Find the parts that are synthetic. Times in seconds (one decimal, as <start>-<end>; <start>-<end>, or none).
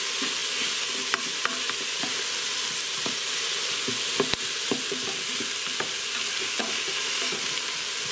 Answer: 0.4-1.1